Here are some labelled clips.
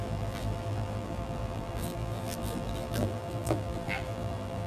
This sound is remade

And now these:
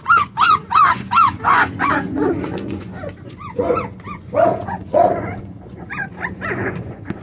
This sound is remade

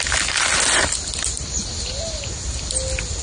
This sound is recorded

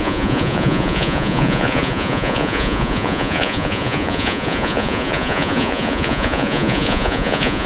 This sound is remade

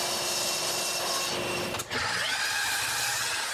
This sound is recorded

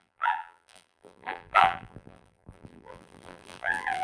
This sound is remade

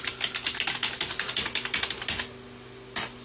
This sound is recorded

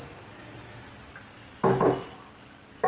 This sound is recorded